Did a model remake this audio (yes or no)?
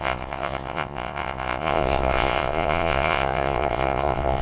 yes